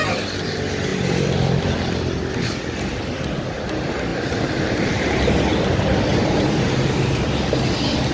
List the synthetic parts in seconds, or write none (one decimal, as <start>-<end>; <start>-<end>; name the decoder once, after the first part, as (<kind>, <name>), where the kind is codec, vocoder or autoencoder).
4.1-5.6 (vocoder, BigVGAN v2); 6.1-7.4